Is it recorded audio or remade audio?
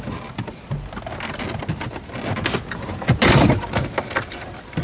recorded